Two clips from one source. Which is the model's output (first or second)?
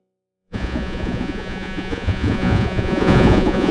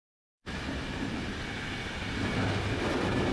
first